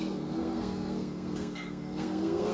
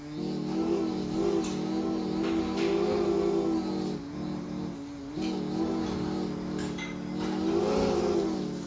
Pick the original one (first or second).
second